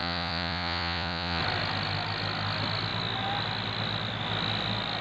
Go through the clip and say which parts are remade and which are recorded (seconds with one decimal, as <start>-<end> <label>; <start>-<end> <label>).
0.0-1.4 remade; 1.4-5.0 recorded